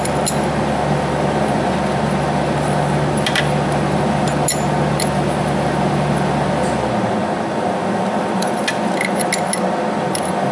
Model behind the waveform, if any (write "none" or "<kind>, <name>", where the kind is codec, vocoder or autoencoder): none